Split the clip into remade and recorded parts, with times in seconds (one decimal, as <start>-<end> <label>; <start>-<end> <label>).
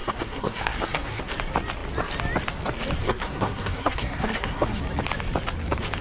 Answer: 0.0-1.2 remade; 1.2-3.0 recorded; 3.0-4.8 remade; 4.8-6.0 recorded